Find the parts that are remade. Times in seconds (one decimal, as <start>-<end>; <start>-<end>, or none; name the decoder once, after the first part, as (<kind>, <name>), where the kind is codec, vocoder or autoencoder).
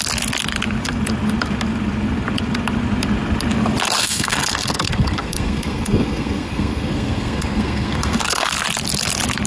4.0-8.5 (codec, SNAC)